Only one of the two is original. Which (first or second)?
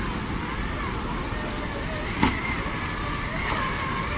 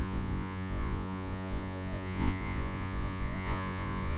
first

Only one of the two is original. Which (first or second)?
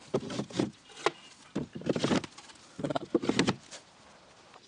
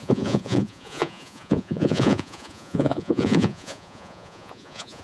first